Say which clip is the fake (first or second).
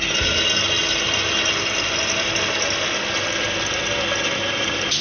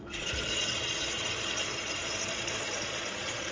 second